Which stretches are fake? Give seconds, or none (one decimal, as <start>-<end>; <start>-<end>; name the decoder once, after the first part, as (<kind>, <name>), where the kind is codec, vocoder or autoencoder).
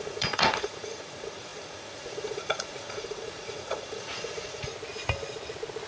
0.0-4.7 (vocoder, Vocos)